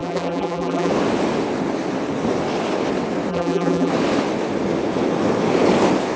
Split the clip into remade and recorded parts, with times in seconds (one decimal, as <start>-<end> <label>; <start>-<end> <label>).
0.0-0.9 remade; 0.9-3.3 recorded; 3.3-3.9 remade; 3.9-6.2 recorded